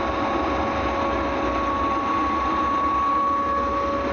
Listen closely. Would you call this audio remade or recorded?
recorded